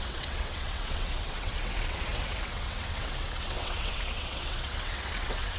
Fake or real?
fake